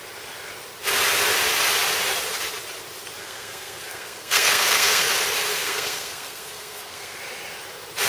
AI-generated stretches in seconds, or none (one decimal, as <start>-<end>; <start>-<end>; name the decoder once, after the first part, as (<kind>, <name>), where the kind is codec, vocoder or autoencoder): 3.2-5.1 (codec, SNAC); 5.5-7.2